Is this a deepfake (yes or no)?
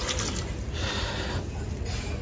no